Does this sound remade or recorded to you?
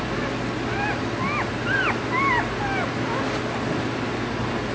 recorded